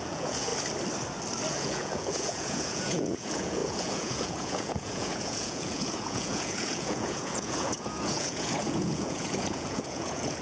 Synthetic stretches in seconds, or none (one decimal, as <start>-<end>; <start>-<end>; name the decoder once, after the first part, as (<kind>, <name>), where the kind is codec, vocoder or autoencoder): 0.0-0.5 (vocoder, Vocos); 1.5-10.4